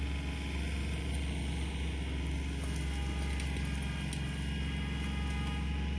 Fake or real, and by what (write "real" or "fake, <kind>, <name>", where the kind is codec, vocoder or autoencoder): real